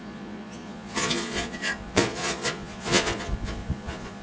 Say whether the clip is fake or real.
fake